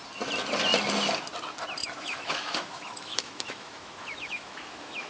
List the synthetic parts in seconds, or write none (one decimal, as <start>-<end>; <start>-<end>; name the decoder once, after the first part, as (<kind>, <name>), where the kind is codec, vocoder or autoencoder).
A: 1.8-5.1 (autoencoder, DAC-VAE)